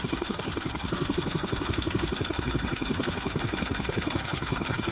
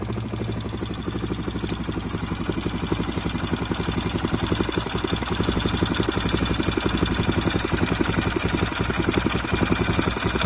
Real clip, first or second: second